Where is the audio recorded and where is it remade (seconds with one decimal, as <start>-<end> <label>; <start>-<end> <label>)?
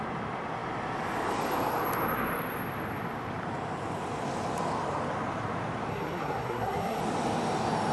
0.0-5.9 recorded; 5.9-7.0 remade; 7.0-7.9 recorded